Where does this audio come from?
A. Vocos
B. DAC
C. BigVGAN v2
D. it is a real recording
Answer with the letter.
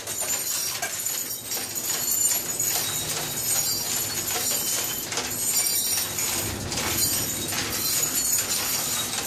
D